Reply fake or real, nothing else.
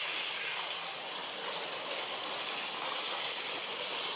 real